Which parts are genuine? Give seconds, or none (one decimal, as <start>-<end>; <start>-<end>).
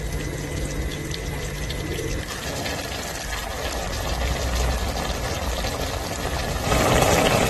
0.0-0.9; 3.4-7.5